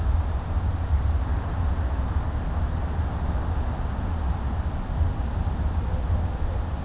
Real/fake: real